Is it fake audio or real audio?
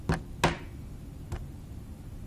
real